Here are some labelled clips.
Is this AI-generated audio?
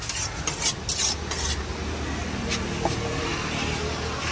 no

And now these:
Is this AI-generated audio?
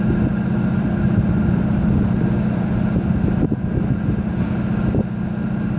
no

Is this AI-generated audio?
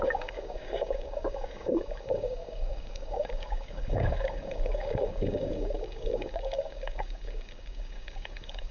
yes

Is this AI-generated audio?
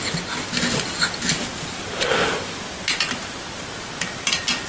no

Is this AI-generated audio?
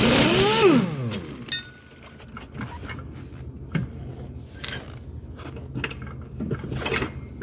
no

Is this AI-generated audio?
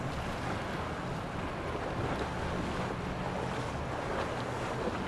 no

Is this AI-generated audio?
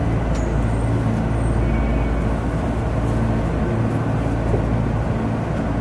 no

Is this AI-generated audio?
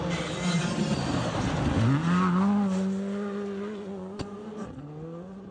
no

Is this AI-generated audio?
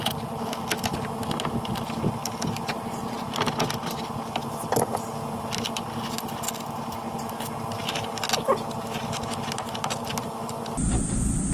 no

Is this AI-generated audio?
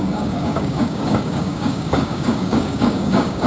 yes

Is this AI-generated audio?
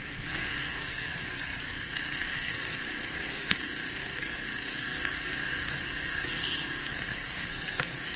yes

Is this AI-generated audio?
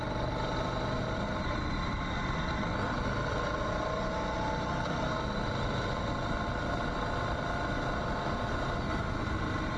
no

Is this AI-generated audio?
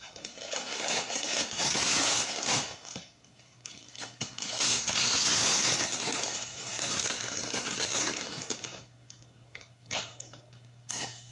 yes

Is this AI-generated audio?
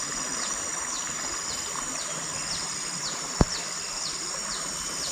no